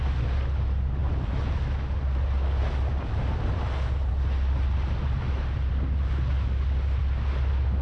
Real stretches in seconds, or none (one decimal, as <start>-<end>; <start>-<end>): 0.0-7.8